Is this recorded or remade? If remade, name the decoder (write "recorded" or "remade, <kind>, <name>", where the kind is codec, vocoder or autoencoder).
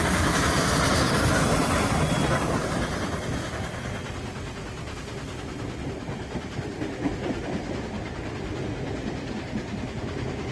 recorded